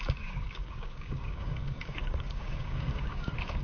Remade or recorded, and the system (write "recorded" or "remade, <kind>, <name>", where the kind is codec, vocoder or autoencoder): remade, codec, DAC